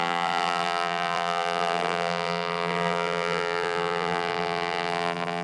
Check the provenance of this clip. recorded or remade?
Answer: remade